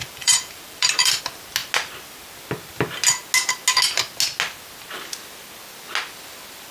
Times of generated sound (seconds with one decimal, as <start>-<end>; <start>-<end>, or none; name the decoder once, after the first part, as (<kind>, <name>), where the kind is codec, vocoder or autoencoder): 0.0-1.2 (vocoder, BigVGAN v2)

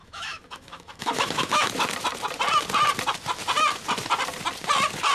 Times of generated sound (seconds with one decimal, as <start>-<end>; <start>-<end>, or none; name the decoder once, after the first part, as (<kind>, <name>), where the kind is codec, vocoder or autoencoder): 0.0-1.7 (autoencoder, DAC-VAE)

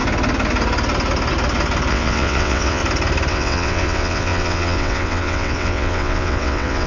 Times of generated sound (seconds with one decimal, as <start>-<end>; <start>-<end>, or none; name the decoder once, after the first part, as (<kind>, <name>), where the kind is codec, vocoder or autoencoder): 1.9-2.8 (vocoder, WaveNeXt); 3.3-6.9

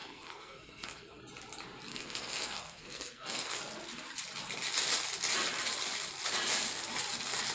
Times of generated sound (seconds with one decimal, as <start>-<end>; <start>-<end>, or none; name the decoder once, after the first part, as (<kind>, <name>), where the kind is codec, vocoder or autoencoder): 0.0-1.2 (codec, SNAC); 1.9-3.6

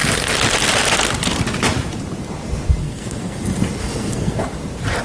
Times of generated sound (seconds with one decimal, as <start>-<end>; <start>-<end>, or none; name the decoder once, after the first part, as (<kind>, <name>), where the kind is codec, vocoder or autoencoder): 2.8-3.4 (codec, SNAC); 3.8-4.4